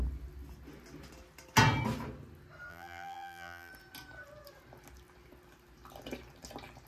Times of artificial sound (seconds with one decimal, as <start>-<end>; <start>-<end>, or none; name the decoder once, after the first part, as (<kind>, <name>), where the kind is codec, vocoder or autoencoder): 2.7-3.7 (vocoder, BigVGAN v2)